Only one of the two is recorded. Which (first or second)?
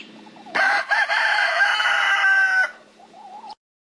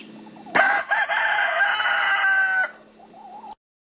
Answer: second